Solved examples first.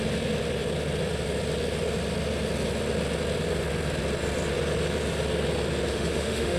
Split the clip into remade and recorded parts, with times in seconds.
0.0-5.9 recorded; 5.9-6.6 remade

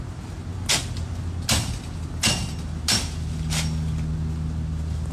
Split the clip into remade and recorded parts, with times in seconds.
0.0-5.1 recorded